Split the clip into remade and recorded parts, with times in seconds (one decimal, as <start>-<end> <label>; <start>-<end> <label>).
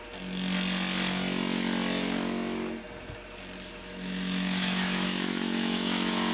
0.0-3.8 recorded; 3.8-6.3 remade